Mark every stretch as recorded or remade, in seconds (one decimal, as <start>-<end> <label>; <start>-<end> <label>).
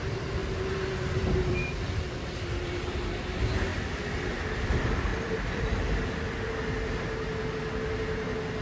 0.0-0.4 recorded; 0.4-2.5 remade; 2.5-5.1 recorded; 5.1-6.5 remade; 6.5-8.6 recorded